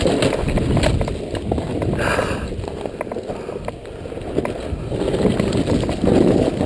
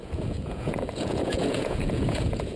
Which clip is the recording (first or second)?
first